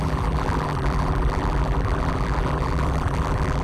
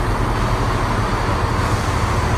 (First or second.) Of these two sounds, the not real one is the first